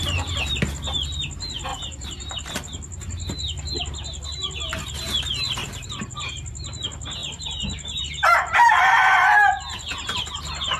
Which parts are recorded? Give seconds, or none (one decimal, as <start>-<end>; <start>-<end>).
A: 0.0-1.7; 2.5-5.6; 6.3-10.8